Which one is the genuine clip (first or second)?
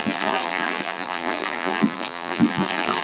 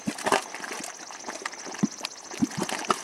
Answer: second